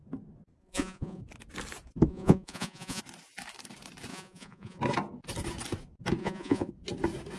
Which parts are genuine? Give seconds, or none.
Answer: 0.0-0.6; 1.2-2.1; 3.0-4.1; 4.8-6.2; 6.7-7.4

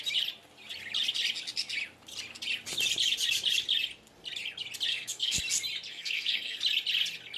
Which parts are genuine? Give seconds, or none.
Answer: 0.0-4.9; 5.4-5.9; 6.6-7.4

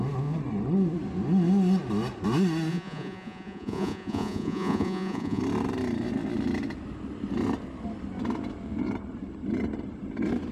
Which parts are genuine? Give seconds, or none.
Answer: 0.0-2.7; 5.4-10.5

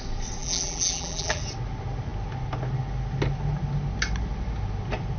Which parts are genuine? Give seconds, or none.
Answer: 0.0-0.4; 1.4-5.2

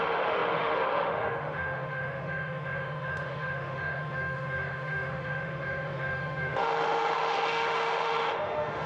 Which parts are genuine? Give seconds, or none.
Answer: none